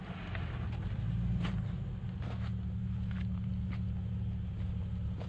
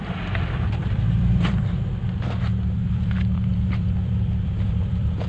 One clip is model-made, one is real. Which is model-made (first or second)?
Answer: second